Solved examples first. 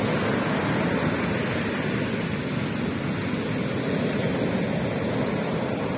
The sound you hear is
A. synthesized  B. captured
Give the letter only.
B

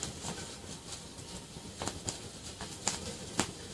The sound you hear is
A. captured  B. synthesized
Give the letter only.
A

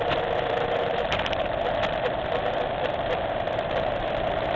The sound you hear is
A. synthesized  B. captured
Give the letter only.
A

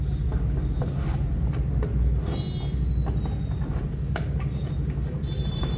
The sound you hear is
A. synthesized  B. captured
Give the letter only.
B